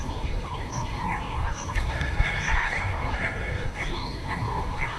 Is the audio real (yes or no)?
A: no